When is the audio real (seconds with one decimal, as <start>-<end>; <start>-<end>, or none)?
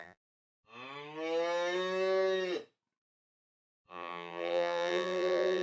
0.6-3.9